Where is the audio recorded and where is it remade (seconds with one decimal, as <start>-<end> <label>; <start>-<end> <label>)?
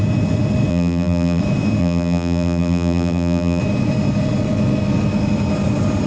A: 0.0-0.7 recorded; 0.7-1.4 remade; 1.4-1.8 recorded; 1.8-3.6 remade; 3.6-6.1 recorded